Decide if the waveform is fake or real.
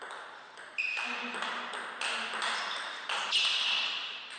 real